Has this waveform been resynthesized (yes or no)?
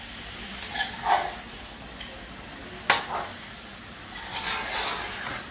no